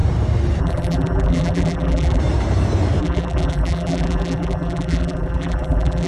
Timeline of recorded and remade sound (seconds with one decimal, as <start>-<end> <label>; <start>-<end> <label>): 0.0-0.6 recorded; 0.6-2.2 remade; 2.2-3.0 recorded; 3.0-6.1 remade